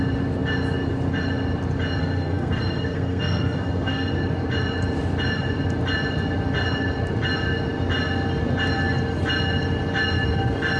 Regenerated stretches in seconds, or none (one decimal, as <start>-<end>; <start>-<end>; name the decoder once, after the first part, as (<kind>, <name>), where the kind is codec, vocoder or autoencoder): 2.0-4.1 (codec, SNAC)